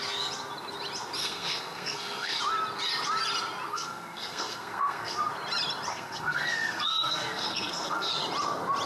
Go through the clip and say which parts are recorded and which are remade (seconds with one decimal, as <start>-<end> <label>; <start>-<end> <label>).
0.0-1.2 recorded; 1.2-2.4 remade; 2.4-3.7 recorded; 3.7-5.3 remade; 5.3-5.9 recorded; 5.9-8.1 remade; 8.1-8.9 recorded